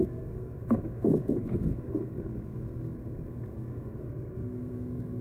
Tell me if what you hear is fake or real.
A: fake